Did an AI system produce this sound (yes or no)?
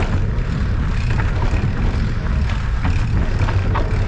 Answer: no